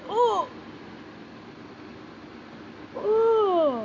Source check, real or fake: real